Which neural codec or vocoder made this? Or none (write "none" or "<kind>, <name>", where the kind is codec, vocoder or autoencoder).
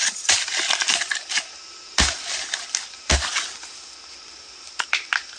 none